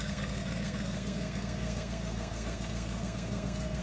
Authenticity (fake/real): fake